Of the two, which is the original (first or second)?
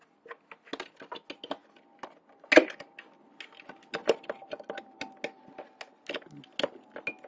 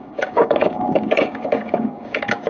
first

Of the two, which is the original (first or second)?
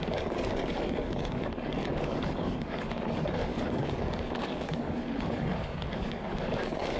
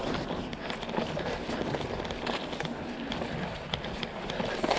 second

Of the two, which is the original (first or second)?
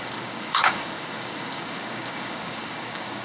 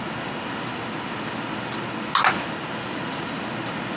second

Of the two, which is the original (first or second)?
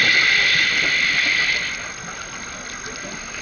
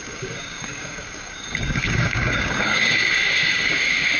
first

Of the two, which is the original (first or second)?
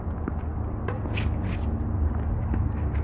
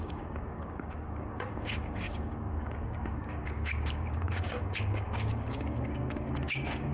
first